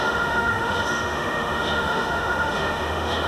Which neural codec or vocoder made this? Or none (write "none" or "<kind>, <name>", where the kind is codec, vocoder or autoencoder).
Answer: autoencoder, DAC-VAE